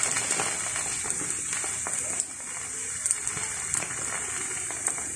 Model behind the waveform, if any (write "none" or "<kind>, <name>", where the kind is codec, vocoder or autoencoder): none